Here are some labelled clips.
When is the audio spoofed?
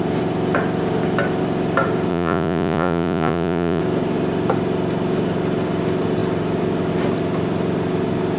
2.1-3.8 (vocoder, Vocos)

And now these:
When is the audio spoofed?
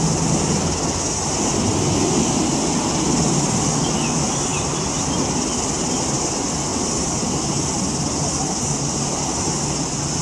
4.5-5.6 (vocoder, BigVGAN v2)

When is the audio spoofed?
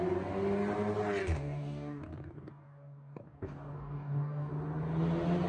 1.2-4.5 (codec, DAC)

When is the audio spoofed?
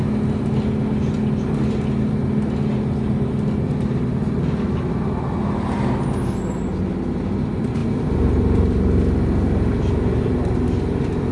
7.8-11.3 (vocoder, BigVGAN v2)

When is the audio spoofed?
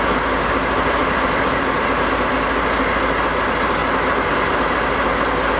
none